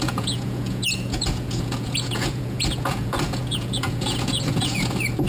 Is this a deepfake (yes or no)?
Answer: yes